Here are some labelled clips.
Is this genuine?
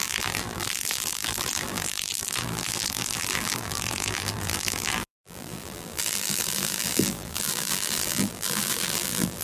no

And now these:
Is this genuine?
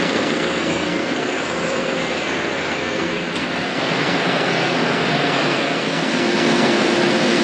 no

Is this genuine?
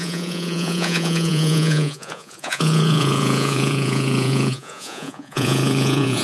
no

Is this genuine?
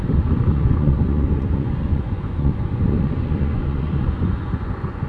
no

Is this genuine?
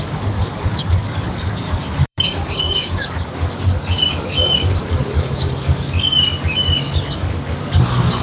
no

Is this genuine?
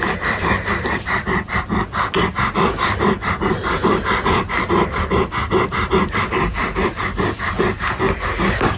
yes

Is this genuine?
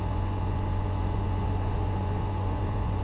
no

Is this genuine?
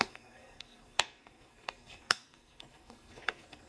no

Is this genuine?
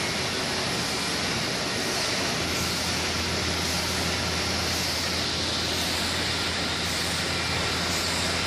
yes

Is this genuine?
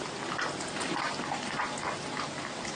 no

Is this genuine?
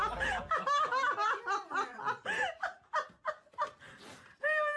yes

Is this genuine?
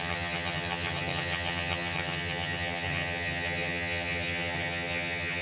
no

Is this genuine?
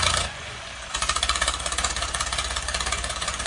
no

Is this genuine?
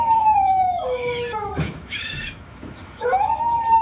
no